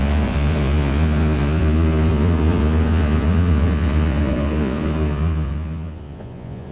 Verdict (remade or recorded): remade